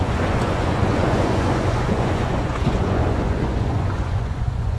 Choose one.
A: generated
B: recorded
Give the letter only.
A